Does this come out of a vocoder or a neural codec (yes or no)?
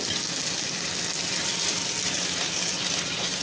no